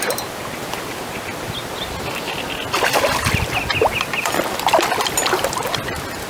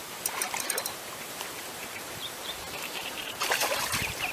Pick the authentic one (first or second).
first